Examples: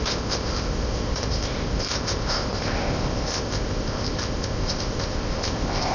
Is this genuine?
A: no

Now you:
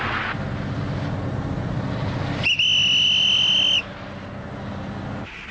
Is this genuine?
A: yes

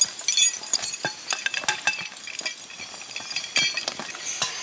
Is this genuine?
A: yes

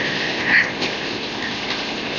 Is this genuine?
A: no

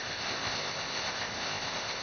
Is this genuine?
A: no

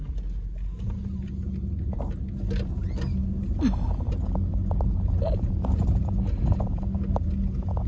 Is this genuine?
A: yes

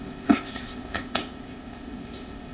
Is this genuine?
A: no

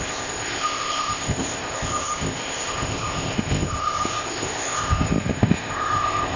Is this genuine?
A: no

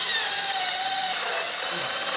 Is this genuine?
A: yes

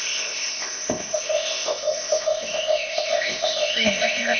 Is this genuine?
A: no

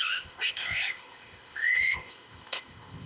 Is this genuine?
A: no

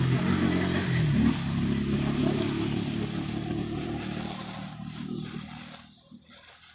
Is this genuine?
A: yes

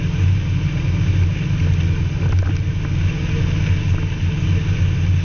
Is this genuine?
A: yes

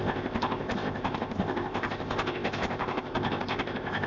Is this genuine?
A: no